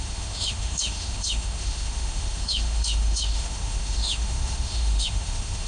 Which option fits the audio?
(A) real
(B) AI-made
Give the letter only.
B